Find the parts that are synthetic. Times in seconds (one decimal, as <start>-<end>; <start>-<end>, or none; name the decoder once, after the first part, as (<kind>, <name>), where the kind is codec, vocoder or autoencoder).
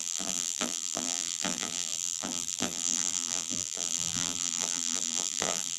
0.0-5.8 (vocoder, BigVGAN v2)